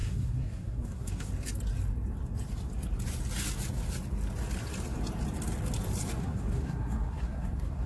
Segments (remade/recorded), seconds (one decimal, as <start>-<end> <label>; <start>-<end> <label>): 0.0-1.3 remade; 1.3-6.2 recorded; 6.2-7.9 remade